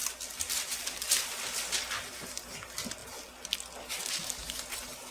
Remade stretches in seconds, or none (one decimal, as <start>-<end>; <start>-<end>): none